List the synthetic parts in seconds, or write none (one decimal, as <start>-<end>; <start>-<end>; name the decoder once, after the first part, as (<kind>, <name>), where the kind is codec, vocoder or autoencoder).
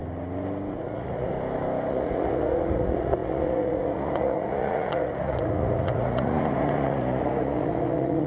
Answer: 0.7-1.3 (vocoder, Vocos); 1.9-8.3